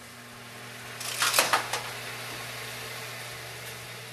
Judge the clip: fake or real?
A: real